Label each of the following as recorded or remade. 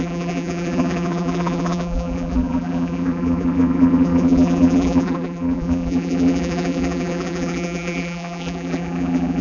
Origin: remade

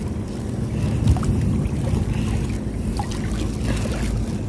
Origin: recorded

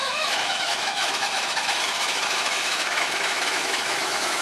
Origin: remade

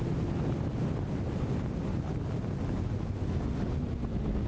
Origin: recorded